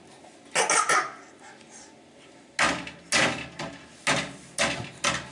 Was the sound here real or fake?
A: real